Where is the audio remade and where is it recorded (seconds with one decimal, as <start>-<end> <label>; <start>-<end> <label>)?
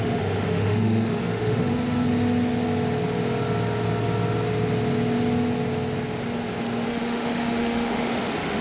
0.0-1.7 remade; 1.7-6.9 recorded; 6.9-8.6 remade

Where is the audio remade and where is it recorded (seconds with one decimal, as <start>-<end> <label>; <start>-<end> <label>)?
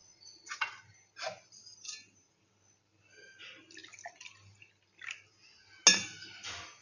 0.0-0.7 remade; 0.7-6.8 recorded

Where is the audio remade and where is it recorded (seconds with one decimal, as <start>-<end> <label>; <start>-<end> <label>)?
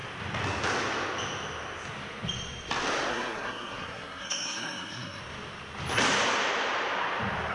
0.0-3.1 recorded; 3.1-5.2 remade; 5.2-7.5 recorded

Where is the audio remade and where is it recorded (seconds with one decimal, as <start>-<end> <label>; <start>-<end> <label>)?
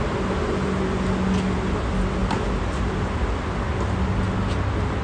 0.0-5.0 recorded